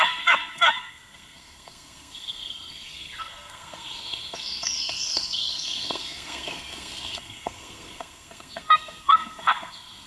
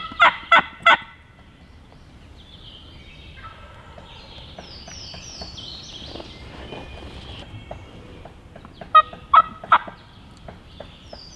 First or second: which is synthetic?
first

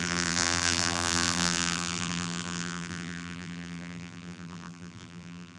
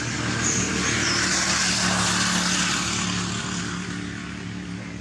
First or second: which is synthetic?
first